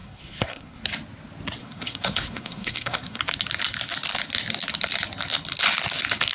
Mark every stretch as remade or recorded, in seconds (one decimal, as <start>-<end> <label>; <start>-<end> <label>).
0.0-0.8 remade; 0.8-1.6 recorded; 1.6-3.2 remade; 3.2-6.3 recorded